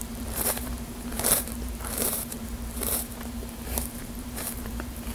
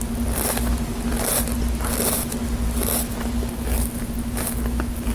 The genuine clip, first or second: second